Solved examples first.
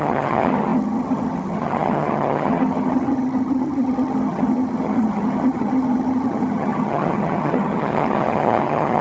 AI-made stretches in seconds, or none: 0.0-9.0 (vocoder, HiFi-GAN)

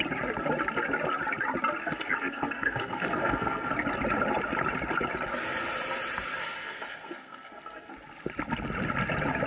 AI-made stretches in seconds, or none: 1.8-3.7 (codec, SNAC); 6.4-7.9